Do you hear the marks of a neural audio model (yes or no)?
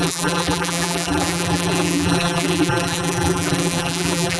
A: yes